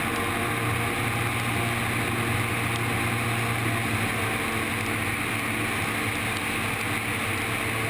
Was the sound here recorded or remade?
recorded